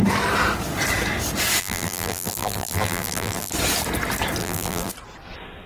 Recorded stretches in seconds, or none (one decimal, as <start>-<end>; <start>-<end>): 0.0-1.6; 3.5-4.4; 4.9-5.7